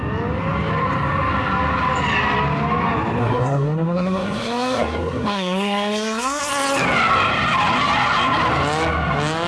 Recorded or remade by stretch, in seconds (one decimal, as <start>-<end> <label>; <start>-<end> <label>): 0.0-3.2 recorded; 3.2-6.4 remade; 6.4-9.5 recorded